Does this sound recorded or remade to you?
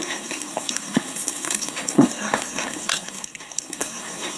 remade